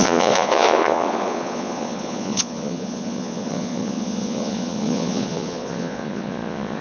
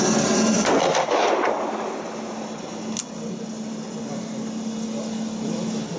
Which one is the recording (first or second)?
second